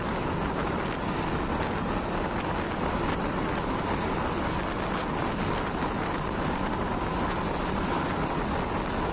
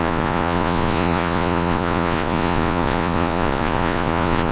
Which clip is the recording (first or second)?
first